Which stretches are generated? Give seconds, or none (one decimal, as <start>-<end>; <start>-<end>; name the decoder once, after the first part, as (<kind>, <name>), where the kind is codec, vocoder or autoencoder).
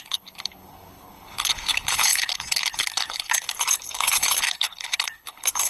0.0-5.7 (codec, HILCodec)